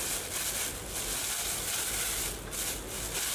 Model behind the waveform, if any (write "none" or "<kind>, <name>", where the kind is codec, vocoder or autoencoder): none